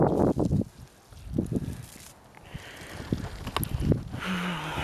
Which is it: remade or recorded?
recorded